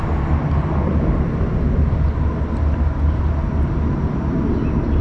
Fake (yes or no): no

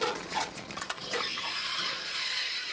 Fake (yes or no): yes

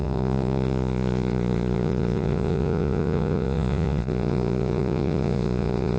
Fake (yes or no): yes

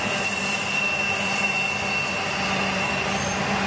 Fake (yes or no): no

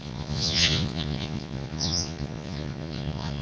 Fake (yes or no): yes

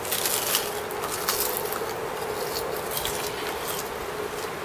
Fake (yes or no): no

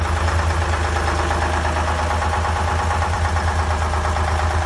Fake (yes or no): no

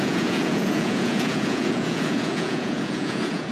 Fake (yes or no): yes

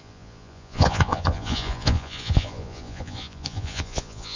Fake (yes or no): yes